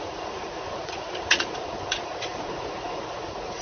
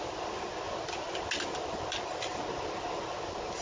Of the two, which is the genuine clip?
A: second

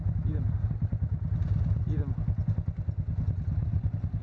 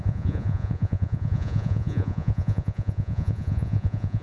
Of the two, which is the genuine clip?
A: first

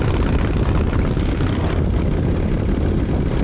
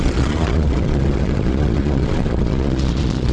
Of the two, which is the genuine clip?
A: first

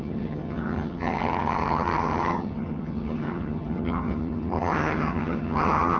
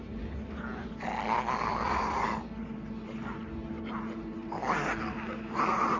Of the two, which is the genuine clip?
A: second